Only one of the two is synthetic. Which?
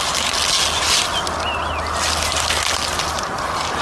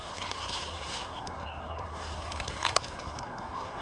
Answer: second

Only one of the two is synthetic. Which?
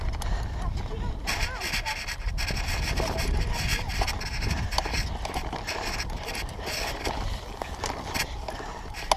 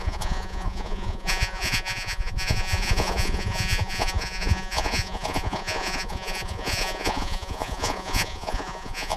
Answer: second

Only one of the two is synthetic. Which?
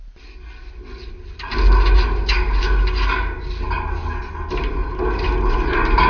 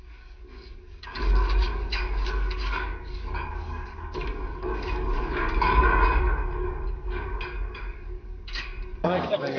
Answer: second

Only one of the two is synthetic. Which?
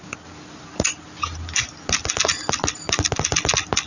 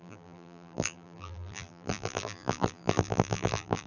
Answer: second